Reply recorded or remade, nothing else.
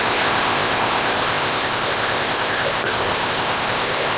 remade